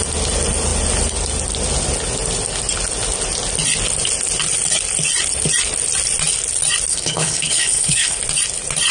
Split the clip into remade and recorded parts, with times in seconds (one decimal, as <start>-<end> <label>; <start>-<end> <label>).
0.0-6.9 recorded; 6.9-8.2 remade; 8.2-8.9 recorded